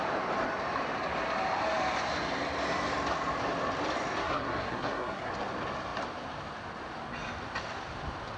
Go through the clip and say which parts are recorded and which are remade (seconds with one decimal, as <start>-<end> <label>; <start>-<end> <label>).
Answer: 0.0-4.2 recorded; 4.2-5.3 remade; 5.3-8.4 recorded